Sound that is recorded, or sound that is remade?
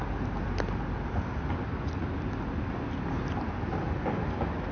recorded